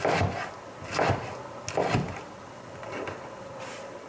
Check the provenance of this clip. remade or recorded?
recorded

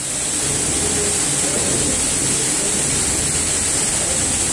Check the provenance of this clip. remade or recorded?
recorded